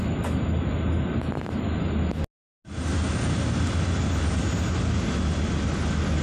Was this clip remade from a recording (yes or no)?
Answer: no